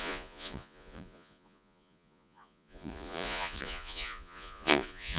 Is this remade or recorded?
remade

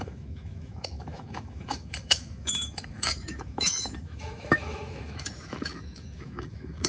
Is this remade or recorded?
remade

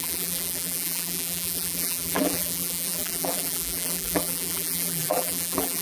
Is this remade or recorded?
remade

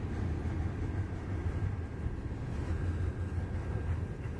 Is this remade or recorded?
recorded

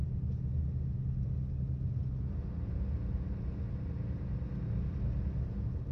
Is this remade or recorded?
recorded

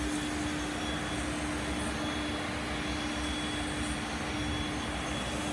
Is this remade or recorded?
recorded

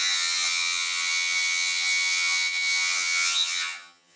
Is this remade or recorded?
remade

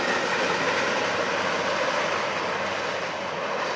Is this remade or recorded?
recorded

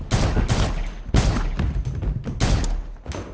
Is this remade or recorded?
recorded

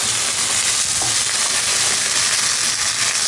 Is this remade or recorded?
recorded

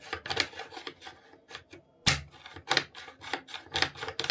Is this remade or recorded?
recorded